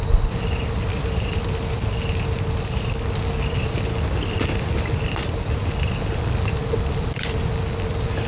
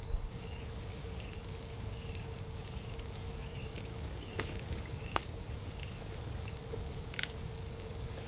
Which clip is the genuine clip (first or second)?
first